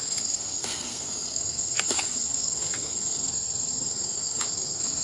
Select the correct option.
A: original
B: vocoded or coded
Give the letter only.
B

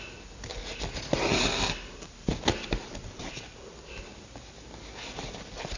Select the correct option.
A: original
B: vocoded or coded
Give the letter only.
A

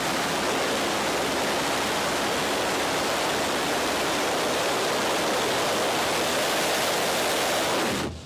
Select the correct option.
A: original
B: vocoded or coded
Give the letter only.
A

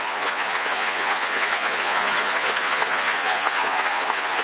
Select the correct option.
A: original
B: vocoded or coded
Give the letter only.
B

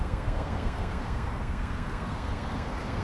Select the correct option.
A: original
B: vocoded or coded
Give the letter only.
B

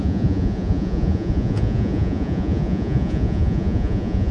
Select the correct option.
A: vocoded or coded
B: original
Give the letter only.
A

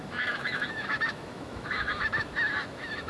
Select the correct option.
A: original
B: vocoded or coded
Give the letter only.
B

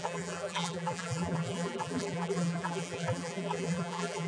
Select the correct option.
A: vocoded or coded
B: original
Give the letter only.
A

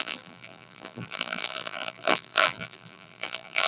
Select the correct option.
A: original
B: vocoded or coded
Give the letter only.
B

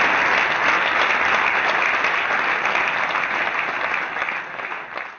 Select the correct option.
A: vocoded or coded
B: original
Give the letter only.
B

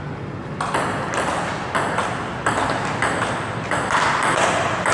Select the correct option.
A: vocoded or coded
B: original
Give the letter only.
B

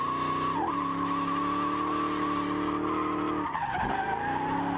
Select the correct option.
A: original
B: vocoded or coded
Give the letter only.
A